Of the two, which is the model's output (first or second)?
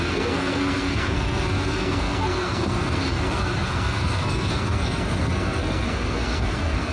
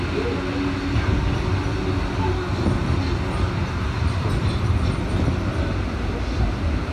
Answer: first